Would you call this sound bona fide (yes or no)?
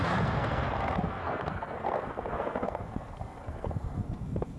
no